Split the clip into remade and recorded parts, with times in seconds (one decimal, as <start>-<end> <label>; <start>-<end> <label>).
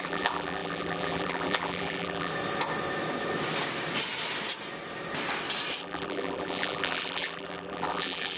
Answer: 0.0-2.3 remade; 2.3-5.8 recorded; 5.8-8.4 remade